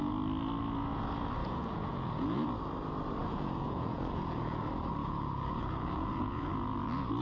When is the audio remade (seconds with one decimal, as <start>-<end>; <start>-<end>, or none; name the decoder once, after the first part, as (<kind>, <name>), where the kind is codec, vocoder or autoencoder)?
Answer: 1.4-2.5 (vocoder, Vocos); 3.2-4.6; 5.0-6.5